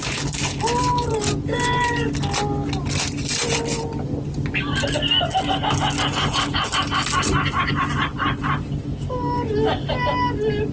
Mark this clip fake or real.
real